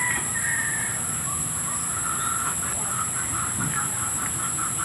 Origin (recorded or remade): recorded